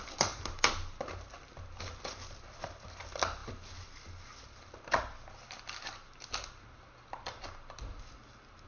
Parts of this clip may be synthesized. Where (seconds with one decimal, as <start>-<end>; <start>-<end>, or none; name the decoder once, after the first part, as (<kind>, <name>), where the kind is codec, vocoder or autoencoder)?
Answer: none